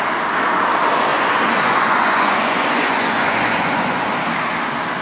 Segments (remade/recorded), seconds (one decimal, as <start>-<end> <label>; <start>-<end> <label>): 0.0-1.1 recorded; 1.1-4.1 remade; 4.1-5.0 recorded